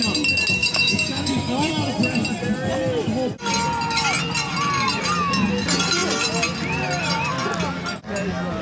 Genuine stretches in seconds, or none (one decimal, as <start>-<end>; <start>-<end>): 0.0-0.6; 1.7-8.6